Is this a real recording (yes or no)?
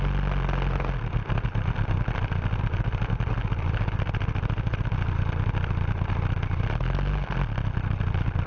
yes